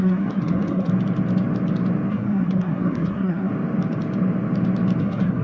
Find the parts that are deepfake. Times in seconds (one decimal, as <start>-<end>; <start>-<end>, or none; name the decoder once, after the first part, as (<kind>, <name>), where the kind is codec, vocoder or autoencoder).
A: 0.0-0.9 (codec, SNAC); 2.1-3.5; 5.0-5.4